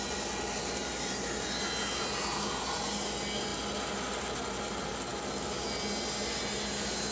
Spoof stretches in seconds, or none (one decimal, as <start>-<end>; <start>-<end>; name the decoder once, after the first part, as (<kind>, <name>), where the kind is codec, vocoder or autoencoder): none